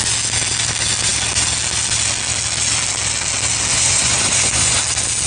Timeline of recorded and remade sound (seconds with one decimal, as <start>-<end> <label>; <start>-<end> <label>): 0.0-3.7 recorded; 3.7-4.8 remade; 4.8-5.3 recorded